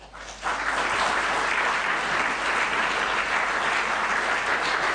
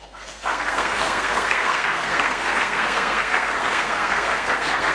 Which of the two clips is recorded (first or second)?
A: first